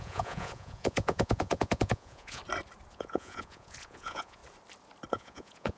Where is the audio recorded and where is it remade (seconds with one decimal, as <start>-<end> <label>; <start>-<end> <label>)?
0.0-2.4 remade; 2.4-2.9 recorded; 2.9-4.4 remade; 4.4-5.1 recorded; 5.1-5.8 remade